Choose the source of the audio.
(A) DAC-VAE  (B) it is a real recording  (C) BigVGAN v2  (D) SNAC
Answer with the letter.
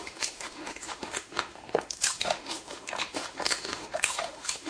A